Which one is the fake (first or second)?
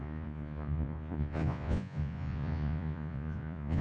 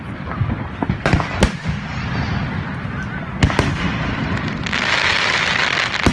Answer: first